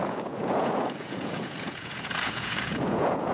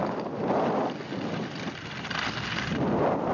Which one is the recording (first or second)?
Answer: second